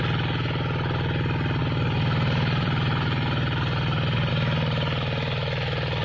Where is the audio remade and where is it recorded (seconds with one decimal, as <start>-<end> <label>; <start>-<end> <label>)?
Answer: 0.0-1.6 recorded; 1.6-4.3 remade; 4.3-6.0 recorded